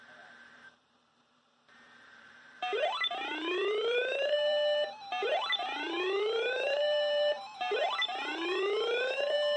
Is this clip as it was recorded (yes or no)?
no